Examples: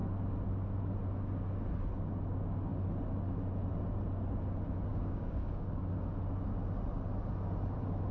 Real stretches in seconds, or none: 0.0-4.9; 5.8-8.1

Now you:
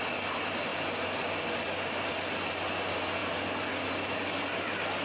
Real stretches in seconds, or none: 0.0-5.0

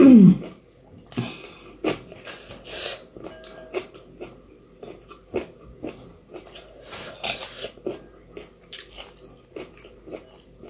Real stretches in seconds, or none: 0.0-10.7

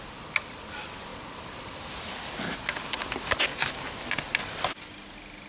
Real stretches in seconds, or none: 0.0-5.5

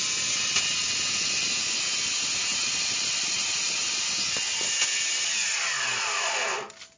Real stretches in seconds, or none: 0.0-7.0

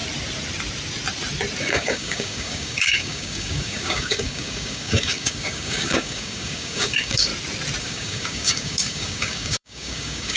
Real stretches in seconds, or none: 0.0-1.6; 7.3-7.8

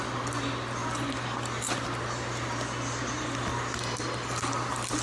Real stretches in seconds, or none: 0.0-5.0

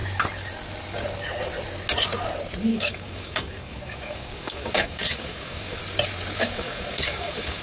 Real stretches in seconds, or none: 0.0-2.7; 5.8-6.4